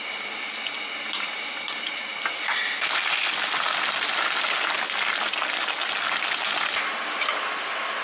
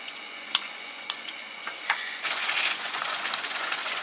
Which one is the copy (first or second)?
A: second